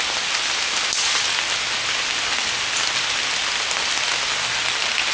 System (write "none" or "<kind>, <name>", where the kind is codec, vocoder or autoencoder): none